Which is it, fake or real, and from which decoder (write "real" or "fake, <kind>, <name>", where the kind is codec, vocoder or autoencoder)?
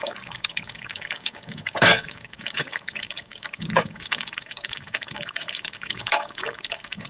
fake, codec, DAC